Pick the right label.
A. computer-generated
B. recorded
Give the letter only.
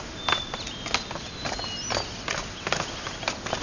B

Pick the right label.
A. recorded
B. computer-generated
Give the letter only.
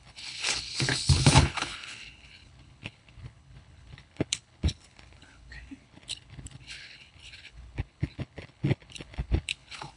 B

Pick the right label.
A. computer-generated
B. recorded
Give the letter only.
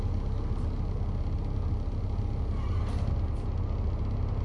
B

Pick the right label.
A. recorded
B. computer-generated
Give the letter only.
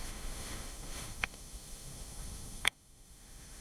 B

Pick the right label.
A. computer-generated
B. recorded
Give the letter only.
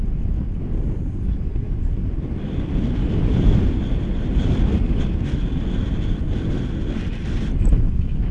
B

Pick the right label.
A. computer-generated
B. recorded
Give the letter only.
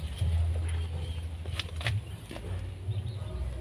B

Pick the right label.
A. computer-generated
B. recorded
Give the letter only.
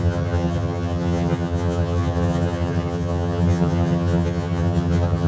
A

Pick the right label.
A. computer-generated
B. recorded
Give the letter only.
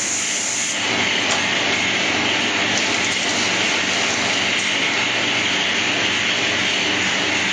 B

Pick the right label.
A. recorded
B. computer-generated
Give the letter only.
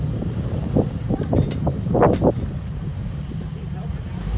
B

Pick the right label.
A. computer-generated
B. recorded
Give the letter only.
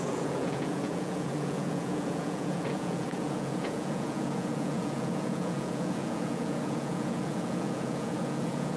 A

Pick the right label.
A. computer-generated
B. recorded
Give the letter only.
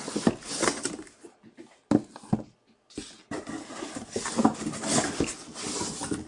B